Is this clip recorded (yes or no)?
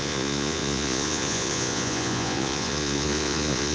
no